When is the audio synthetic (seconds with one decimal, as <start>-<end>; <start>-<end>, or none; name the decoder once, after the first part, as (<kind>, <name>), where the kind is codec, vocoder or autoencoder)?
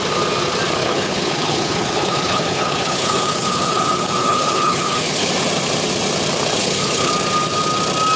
0.8-5.3 (codec, HILCodec); 6.6-7.1